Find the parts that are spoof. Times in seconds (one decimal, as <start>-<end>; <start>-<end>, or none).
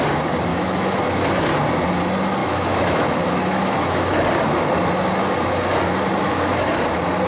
0.5-1.0; 2.4-4.2; 6.2-6.7